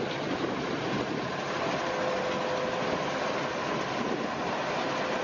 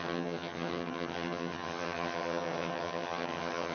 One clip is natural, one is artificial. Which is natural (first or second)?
first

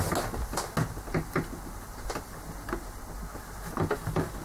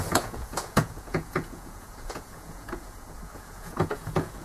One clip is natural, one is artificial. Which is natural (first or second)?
first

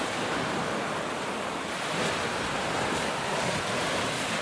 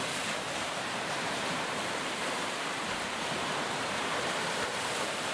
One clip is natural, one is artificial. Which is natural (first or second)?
first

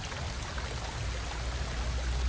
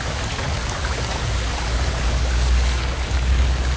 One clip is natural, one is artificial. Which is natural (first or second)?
first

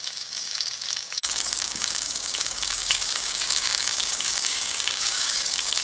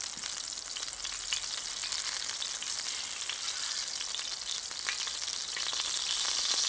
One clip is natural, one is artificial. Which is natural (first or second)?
second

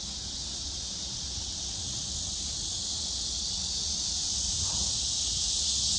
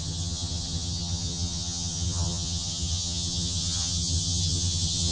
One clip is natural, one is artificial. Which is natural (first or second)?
first